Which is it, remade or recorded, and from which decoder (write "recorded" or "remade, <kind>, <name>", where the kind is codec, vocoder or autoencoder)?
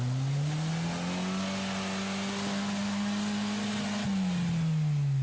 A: recorded